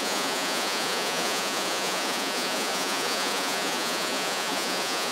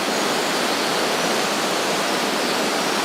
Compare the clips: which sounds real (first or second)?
second